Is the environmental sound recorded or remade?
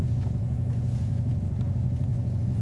remade